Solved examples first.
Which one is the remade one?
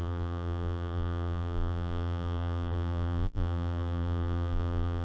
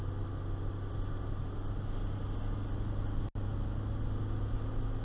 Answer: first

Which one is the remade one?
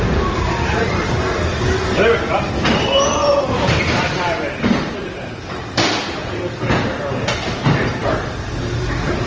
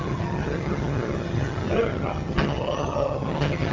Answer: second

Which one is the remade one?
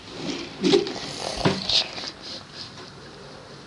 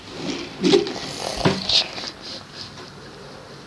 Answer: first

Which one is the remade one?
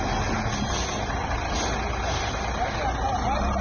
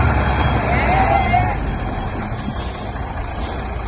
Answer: second